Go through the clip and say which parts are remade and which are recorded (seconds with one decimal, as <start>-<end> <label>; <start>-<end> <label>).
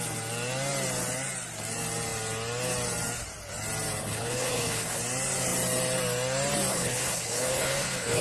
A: 0.0-4.0 recorded; 4.0-5.0 remade; 5.0-6.7 recorded; 6.7-8.2 remade